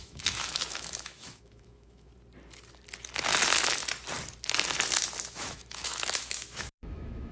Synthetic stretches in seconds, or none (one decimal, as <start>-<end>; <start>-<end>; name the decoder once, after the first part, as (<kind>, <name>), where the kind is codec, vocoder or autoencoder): 0.0-2.1 (autoencoder, DAC-VAE); 5.3-7.3